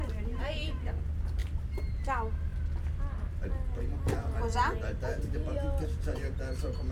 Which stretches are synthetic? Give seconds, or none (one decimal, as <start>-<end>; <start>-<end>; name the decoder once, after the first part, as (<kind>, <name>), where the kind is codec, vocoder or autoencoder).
1.4-2.0 (vocoder, BigVGAN v2); 2.5-3.1; 4.2-6.4